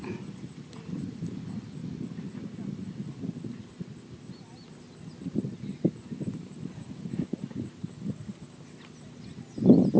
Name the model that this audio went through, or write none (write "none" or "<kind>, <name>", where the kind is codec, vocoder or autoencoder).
none